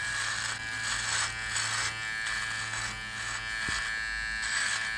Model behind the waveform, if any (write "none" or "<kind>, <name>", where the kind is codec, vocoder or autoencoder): none